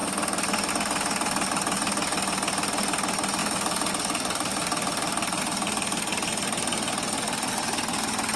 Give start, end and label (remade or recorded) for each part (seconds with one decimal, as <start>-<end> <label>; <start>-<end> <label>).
0.0-3.4 recorded; 3.4-3.9 remade; 3.9-4.5 recorded; 4.5-5.4 remade; 5.4-8.4 recorded